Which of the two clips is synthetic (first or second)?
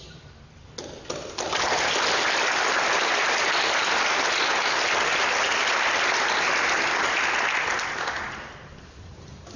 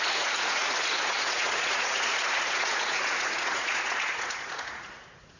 second